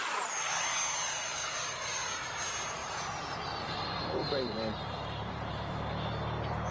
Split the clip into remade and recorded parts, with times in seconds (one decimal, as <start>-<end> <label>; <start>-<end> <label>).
0.0-2.8 recorded; 2.8-3.6 remade; 3.6-4.2 recorded; 4.2-5.7 remade; 5.7-6.7 recorded